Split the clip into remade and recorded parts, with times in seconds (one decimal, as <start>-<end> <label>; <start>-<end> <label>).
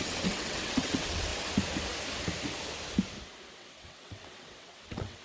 0.0-1.3 remade; 1.3-3.5 recorded; 3.5-5.2 remade